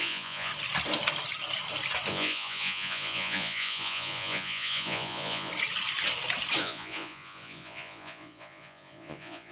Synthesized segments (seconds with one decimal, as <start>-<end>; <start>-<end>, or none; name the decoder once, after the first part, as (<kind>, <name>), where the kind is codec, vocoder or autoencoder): 0.0-0.5 (vocoder, Vocos); 2.1-5.5; 6.6-9.5